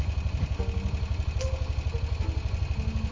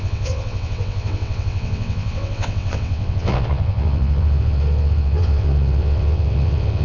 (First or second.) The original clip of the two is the first